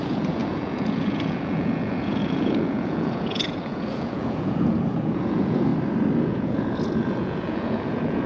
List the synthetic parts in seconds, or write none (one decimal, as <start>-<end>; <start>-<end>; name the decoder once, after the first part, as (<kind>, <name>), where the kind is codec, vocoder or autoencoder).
0.0-5.7 (vocoder, Vocos); 6.2-8.3